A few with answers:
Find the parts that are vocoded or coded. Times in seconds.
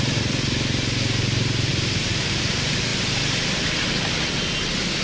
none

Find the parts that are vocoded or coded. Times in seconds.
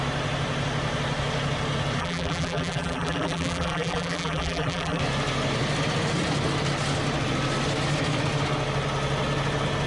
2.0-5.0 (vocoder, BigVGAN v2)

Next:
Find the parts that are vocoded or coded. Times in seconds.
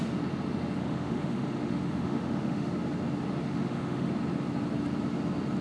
0.8-2.7 (autoencoder, DAC-VAE); 3.4-4.1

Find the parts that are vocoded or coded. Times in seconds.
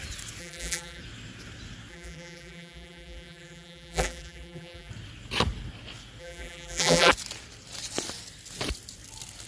0.4-1.0 (vocoder, BigVGAN v2); 1.9-4.9; 6.2-7.1